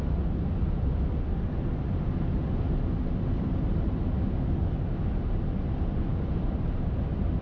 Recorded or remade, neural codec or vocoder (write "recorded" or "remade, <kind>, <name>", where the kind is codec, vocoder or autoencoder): recorded